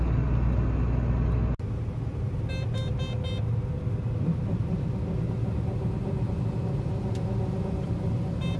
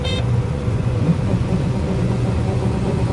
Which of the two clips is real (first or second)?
first